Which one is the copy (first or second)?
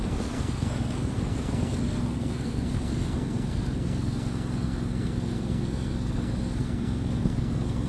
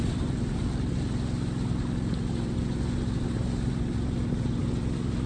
first